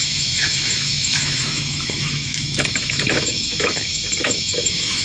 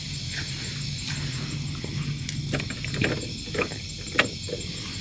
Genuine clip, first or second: second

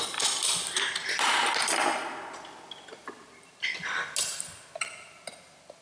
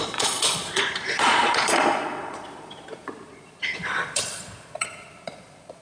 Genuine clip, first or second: first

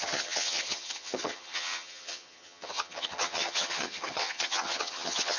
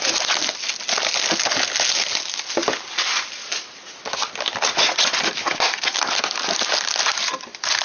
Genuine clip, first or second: second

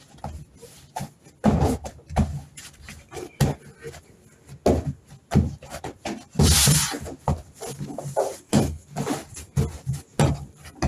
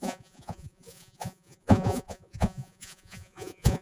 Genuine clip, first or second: first